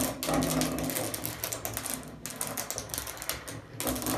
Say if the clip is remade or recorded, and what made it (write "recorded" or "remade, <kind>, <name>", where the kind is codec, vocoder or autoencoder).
recorded